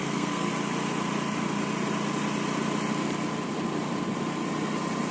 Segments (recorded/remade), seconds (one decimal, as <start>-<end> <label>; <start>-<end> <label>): 0.0-0.5 remade; 0.5-5.1 recorded